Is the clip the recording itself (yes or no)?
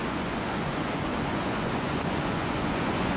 no